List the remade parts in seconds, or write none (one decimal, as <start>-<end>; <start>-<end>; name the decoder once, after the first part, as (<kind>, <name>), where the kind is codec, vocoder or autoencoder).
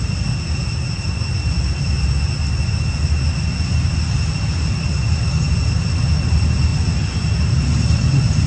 none